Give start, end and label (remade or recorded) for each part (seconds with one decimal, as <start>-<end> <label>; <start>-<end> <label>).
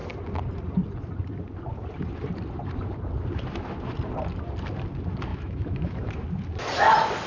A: 0.0-5.3 recorded; 5.3-6.1 remade; 6.1-7.3 recorded